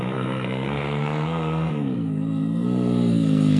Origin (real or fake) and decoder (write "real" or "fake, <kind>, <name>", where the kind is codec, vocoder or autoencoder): fake, codec, SNAC